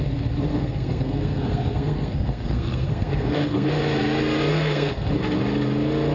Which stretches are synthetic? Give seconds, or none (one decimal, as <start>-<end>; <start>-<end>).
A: 0.5-3.7; 4.5-5.1